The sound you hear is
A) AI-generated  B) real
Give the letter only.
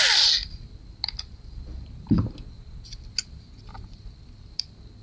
B